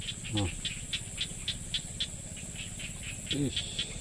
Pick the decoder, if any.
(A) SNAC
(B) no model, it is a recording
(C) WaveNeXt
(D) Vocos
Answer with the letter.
B